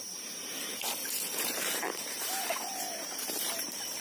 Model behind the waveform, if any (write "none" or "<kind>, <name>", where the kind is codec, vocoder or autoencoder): vocoder, BigVGAN v2